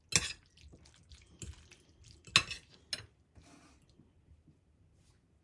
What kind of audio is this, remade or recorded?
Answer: recorded